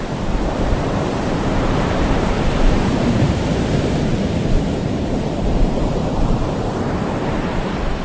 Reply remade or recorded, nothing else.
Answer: remade